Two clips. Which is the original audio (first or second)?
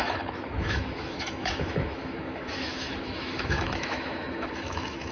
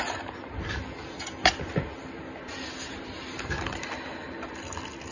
second